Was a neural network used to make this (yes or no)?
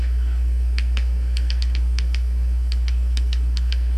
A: yes